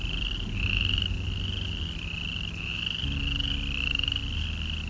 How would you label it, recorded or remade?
recorded